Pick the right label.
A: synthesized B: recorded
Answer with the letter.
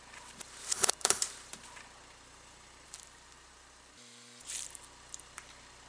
A